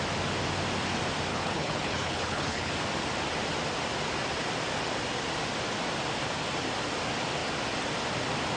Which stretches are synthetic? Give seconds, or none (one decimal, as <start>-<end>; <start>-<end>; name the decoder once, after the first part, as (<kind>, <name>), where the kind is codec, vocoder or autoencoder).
1.3-2.7 (codec, HILCodec)